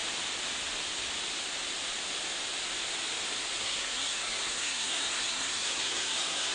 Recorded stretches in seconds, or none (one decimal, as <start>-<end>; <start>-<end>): 0.0-3.6